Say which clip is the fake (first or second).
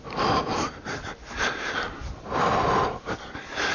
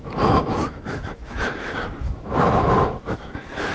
second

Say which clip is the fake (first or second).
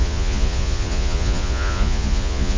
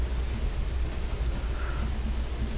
first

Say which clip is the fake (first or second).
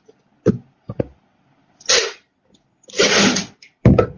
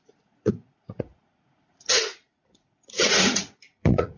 second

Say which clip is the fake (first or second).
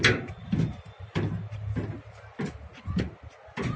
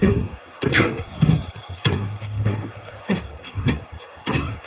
second